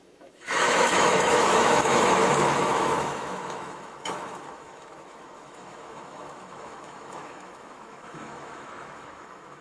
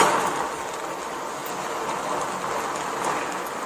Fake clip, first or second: first